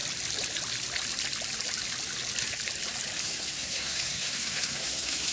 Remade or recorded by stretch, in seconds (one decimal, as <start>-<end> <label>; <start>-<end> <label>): 0.0-3.2 recorded; 3.2-5.3 remade